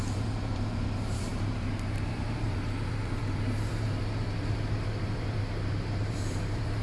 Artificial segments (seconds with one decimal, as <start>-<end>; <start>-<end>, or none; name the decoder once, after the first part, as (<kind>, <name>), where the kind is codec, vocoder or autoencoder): 0.0-6.8 (vocoder, BigVGAN v2)